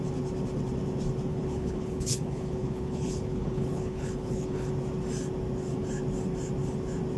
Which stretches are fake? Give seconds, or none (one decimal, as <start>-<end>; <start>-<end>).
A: 1.3-4.7